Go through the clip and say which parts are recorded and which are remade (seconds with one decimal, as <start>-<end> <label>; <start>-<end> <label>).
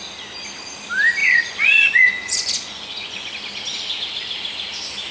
0.0-1.2 recorded; 1.2-3.3 remade; 3.3-5.1 recorded